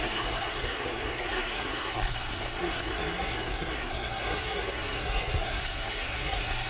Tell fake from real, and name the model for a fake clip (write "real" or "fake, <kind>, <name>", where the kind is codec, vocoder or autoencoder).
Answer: fake, codec, SNAC